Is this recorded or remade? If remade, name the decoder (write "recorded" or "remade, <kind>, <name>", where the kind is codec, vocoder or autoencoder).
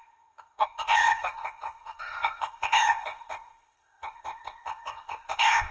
remade, codec, ZipCodec